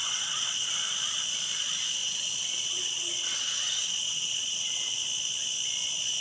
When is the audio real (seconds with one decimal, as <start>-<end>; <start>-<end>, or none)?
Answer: 0.7-2.0; 5.0-6.2